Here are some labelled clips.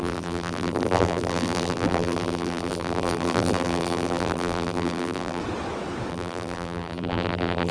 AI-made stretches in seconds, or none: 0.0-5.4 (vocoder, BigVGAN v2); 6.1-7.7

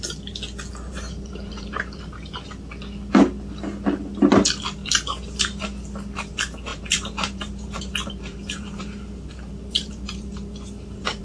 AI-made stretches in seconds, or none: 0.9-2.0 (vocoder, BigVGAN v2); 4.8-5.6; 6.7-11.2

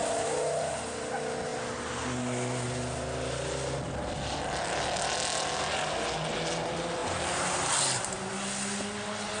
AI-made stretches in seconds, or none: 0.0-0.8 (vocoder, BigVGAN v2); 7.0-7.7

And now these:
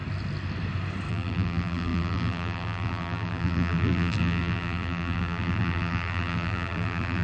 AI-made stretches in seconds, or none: 1.1-7.2 (vocoder, BigVGAN v2)

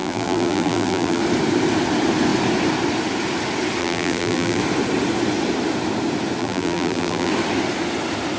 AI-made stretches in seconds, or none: 0.0-1.2 (vocoder, BigVGAN v2); 3.8-4.6; 6.4-7.3

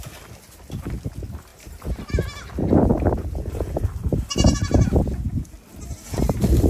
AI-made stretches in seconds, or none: 1.5-2.1 (vocoder, BigVGAN v2); 2.9-4.9

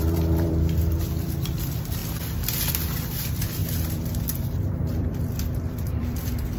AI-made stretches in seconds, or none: 0.0-2.0 (vocoder, BigVGAN v2); 3.0-6.6

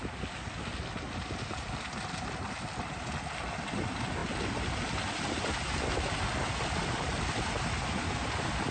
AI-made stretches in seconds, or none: none